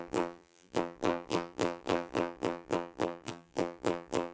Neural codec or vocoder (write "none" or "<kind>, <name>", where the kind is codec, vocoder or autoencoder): vocoder, BigVGAN v2